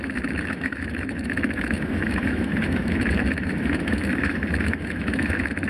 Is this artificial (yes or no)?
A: yes